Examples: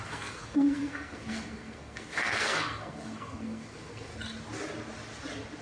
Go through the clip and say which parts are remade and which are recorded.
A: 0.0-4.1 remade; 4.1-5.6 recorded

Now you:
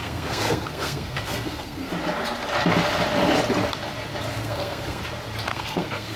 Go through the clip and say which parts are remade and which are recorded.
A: 0.0-1.9 remade; 1.9-4.3 recorded; 4.3-5.0 remade; 5.0-5.5 recorded; 5.5-6.2 remade

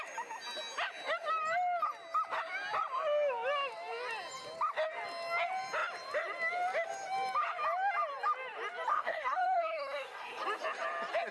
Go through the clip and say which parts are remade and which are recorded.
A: 0.0-8.9 recorded; 8.9-10.4 remade; 10.4-11.3 recorded